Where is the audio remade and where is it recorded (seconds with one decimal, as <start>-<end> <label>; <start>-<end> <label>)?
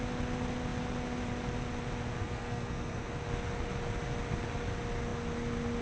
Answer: 0.0-2.2 recorded; 2.2-3.2 remade; 3.2-5.8 recorded